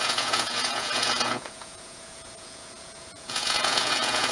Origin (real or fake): fake